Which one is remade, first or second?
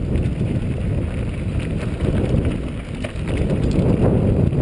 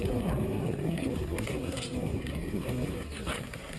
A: second